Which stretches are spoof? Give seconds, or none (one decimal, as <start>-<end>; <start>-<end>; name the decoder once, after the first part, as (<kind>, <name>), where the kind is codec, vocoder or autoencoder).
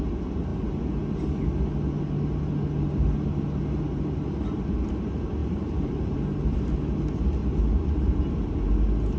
5.4-6.2 (vocoder, BigVGAN v2); 7.4-8.3